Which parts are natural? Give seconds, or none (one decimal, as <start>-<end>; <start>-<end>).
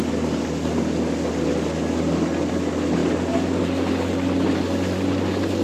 0.0-5.6